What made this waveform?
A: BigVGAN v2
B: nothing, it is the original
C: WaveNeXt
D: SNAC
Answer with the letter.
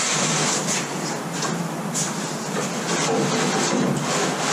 B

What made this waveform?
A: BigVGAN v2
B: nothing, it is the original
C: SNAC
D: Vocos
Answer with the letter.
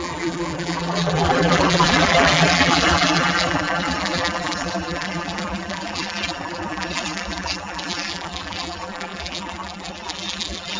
A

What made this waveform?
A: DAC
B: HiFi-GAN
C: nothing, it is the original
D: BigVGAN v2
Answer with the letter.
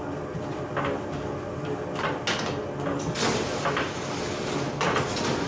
C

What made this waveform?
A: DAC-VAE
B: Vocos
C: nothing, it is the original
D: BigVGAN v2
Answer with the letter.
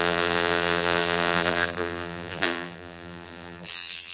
D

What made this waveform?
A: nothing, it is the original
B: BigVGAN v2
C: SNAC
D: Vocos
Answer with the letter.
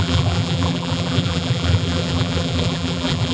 B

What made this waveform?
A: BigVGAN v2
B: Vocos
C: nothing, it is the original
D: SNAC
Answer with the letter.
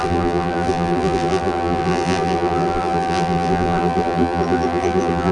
A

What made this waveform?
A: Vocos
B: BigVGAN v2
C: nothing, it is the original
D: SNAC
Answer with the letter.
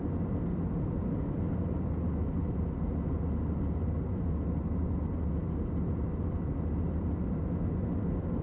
B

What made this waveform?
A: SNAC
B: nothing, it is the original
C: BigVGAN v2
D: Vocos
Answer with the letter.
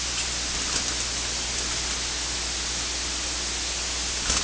B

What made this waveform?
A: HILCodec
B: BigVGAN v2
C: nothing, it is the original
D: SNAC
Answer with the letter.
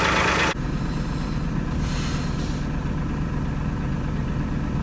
C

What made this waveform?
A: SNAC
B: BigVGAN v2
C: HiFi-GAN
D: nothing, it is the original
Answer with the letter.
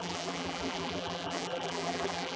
B